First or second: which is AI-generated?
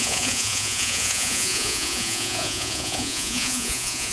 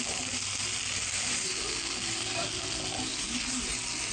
first